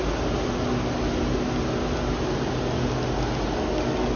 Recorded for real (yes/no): yes